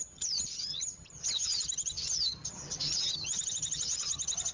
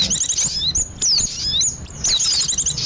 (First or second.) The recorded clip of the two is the second